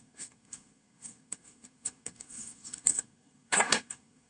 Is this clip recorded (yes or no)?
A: no